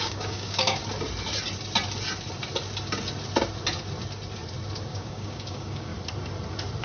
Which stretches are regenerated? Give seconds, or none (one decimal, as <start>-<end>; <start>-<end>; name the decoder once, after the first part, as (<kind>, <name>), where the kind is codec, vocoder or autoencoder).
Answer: 0.0-0.8 (codec, DAC); 4.9-5.9